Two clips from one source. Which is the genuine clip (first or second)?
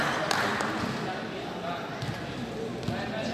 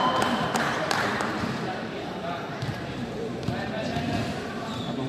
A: first